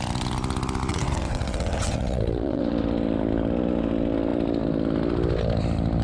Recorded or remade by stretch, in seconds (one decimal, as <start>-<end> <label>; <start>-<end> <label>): 0.0-0.9 recorded; 0.9-2.6 remade; 2.6-6.0 recorded